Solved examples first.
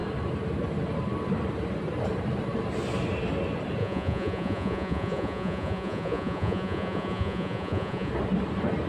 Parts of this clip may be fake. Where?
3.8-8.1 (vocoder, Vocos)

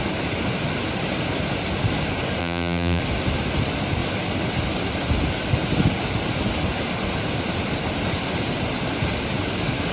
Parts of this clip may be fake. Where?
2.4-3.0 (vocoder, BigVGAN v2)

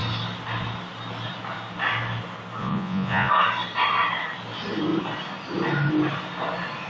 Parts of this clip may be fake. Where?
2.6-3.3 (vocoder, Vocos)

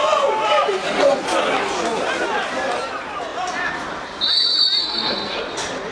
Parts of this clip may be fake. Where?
4.8-5.4 (codec, SNAC)

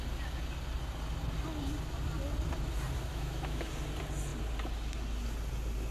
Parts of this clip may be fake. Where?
3.1-3.7 (autoencoder, DAC-VAE)

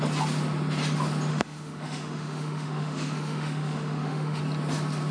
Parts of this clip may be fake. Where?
1.3-4.4 (autoencoder, DAC-VAE)

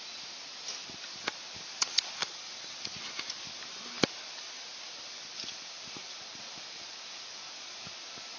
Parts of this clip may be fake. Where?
none